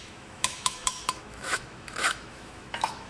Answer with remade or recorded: remade